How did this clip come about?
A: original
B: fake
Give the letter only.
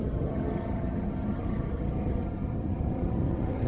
B